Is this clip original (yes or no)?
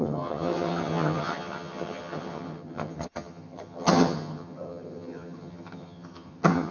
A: no